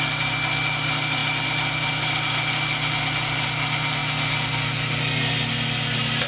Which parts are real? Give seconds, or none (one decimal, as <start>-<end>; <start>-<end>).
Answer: 0.0-6.3